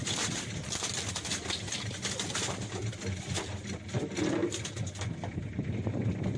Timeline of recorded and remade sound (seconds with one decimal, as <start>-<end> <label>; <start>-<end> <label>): 0.0-4.4 remade; 4.4-5.3 recorded; 5.3-6.4 remade